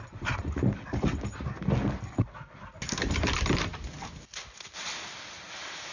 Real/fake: real